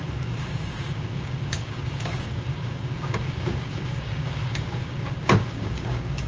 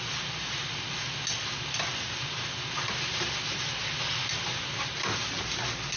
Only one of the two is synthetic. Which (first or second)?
first